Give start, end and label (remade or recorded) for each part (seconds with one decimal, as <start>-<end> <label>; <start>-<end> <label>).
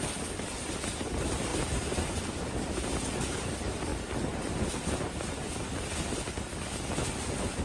0.0-7.6 recorded